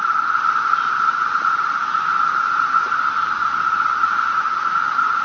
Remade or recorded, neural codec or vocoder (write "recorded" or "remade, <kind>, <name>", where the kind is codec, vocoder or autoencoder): recorded